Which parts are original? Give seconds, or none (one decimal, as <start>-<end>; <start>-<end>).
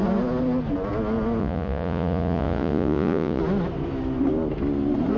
0.0-1.4; 3.4-5.2